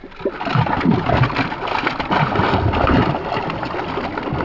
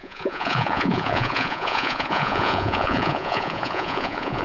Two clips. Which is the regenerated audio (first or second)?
second